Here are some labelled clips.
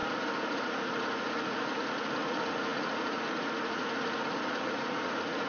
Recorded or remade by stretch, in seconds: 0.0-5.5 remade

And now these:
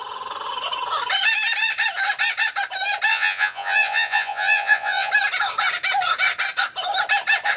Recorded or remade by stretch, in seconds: 0.0-3.1 recorded; 3.1-5.1 remade; 5.1-7.6 recorded

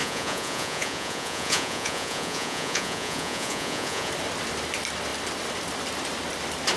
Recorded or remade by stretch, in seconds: 0.0-4.1 remade; 4.1-6.8 recorded

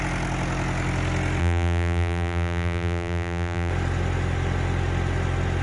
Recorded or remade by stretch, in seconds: 0.0-1.4 recorded; 1.4-3.7 remade; 3.7-5.6 recorded

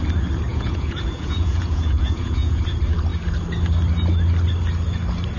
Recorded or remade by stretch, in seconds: 0.0-0.5 recorded; 0.5-2.6 remade; 2.6-5.4 recorded